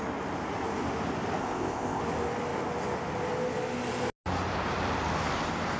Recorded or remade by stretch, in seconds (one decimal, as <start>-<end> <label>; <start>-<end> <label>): 0.0-1.4 recorded; 1.4-2.0 remade; 2.0-5.8 recorded